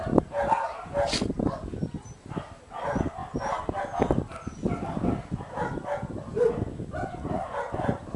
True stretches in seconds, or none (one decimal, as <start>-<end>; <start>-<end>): 0.0-8.2